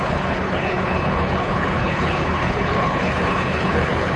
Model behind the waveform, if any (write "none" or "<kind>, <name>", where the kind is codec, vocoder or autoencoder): codec, HILCodec